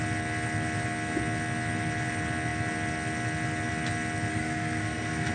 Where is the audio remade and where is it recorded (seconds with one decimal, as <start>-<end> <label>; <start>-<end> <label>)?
0.0-4.3 recorded; 4.3-5.3 remade